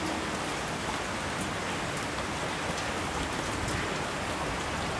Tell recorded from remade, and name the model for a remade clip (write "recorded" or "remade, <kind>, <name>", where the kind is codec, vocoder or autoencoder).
recorded